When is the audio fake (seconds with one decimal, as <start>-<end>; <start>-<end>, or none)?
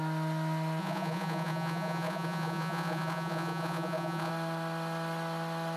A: 0.8-4.3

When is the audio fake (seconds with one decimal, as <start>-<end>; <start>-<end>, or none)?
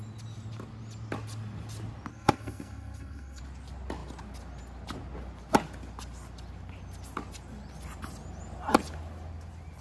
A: 2.1-3.4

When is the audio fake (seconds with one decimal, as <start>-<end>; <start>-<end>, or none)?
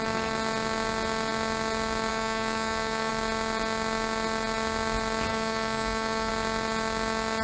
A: 2.1-3.1; 5.3-6.3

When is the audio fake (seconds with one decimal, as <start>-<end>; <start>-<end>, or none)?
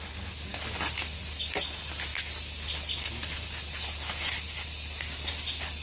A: none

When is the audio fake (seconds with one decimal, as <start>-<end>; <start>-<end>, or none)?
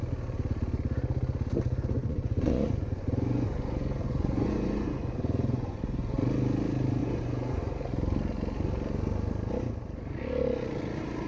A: 2.0-6.2; 7.0-7.6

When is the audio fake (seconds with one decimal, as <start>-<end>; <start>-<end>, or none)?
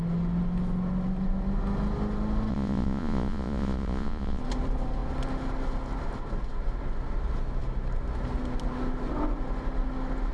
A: 2.5-4.4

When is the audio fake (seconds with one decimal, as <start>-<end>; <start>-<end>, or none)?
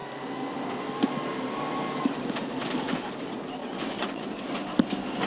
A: 3.6-4.3